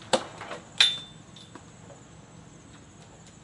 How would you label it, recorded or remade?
recorded